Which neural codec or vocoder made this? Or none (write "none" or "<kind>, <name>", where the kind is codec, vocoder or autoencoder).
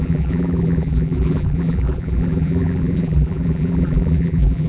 vocoder, BigVGAN v2